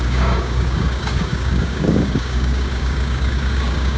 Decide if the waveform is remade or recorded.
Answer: remade